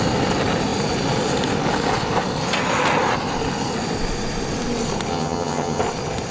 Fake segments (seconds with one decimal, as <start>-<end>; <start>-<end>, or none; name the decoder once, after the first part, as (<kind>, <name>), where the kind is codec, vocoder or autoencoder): 5.1-5.8 (vocoder, HiFi-GAN)

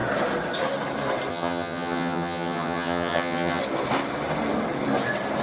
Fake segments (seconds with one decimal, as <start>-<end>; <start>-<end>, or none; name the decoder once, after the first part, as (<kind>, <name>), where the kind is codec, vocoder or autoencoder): 1.3-3.6 (vocoder, HiFi-GAN)

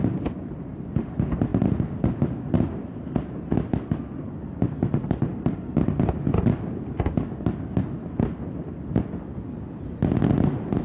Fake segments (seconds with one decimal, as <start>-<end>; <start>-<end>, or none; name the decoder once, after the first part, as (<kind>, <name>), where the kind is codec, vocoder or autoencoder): none

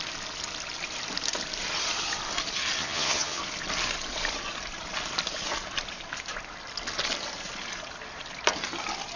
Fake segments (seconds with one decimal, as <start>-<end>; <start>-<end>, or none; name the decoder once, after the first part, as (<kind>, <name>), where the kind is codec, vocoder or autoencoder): 2.8-3.4 (vocoder, HiFi-GAN)

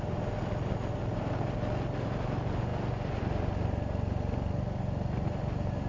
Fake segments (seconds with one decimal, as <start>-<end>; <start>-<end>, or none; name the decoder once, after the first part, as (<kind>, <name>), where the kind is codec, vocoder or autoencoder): none

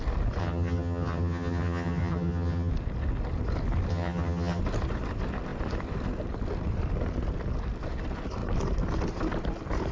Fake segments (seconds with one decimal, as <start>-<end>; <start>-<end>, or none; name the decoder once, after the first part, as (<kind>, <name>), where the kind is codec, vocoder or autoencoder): 0.4-2.7 (vocoder, HiFi-GAN); 3.9-4.6

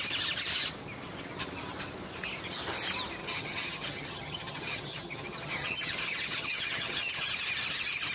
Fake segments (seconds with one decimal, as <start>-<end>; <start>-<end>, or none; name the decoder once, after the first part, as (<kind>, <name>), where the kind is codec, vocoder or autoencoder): 3.2-7.1 (vocoder, HiFi-GAN)